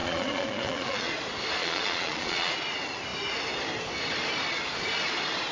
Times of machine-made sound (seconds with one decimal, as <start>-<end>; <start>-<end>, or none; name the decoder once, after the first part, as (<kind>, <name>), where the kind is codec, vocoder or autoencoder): 0.0-1.1 (vocoder, Vocos); 1.6-2.5